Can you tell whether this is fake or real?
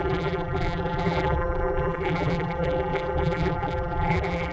fake